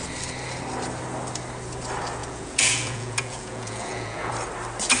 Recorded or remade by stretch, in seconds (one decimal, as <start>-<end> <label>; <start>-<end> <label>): 0.0-2.2 recorded; 2.2-4.3 remade; 4.3-5.0 recorded